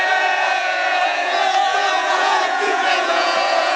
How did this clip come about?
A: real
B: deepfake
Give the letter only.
B